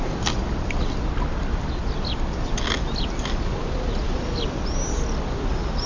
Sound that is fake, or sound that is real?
real